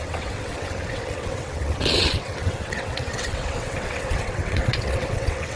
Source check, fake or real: fake